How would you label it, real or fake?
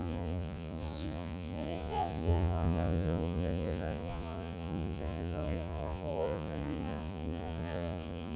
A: fake